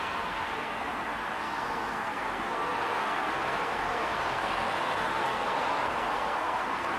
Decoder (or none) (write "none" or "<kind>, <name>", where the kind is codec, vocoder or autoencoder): codec, SNAC